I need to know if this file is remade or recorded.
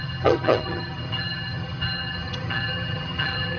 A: remade